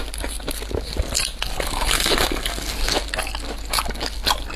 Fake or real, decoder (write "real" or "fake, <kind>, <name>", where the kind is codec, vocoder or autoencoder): real